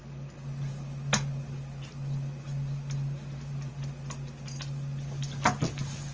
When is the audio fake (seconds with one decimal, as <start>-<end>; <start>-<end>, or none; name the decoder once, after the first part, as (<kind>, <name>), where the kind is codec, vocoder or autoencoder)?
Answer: none